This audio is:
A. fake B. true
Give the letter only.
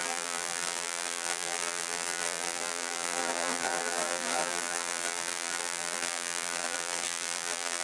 A